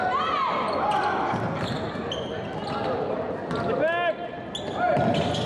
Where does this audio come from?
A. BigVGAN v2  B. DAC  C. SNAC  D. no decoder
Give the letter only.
D